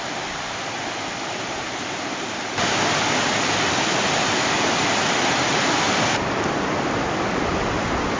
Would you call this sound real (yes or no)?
yes